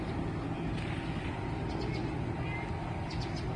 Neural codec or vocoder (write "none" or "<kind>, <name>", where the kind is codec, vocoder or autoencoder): none